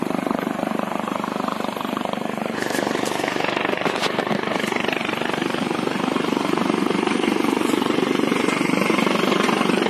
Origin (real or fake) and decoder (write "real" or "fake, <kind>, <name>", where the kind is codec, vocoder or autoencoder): fake, vocoder, BigVGAN v2